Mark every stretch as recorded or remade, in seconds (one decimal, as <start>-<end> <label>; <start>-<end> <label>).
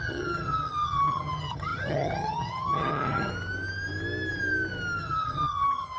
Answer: 0.0-3.3 remade; 3.3-5.0 recorded; 5.0-6.0 remade